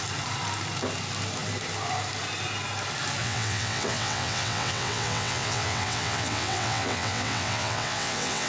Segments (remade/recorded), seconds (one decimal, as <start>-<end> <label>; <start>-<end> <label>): 0.0-3.2 recorded; 3.2-8.5 remade

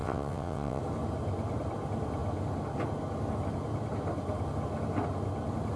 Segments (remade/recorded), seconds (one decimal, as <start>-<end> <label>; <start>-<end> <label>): 0.0-0.8 remade; 0.8-5.8 recorded

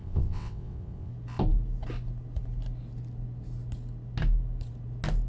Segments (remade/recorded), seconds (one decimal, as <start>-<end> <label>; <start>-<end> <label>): 0.0-1.1 remade; 1.1-5.3 recorded

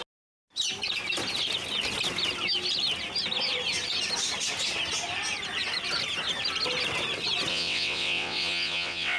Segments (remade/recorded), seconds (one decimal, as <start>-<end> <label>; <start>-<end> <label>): 0.0-7.5 recorded; 7.5-9.2 remade

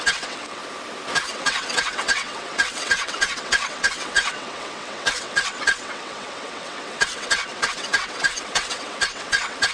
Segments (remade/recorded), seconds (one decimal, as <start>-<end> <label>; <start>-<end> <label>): 0.0-0.6 remade; 0.6-1.3 recorded; 1.3-9.7 remade